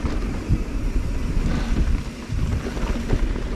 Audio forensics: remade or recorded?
recorded